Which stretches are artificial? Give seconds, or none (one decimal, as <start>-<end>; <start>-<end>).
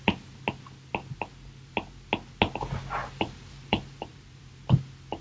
3.0-4.5